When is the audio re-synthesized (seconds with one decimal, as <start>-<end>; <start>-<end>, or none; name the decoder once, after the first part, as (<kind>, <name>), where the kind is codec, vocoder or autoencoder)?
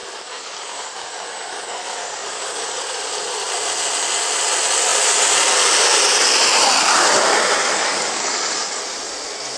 0.0-2.8 (codec, DAC); 7.6-8.8